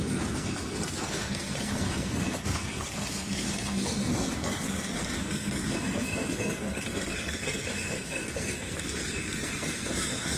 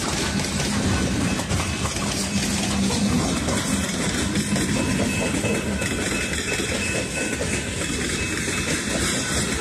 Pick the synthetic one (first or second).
first